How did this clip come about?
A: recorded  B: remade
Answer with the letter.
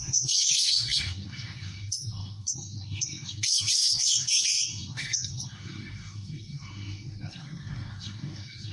B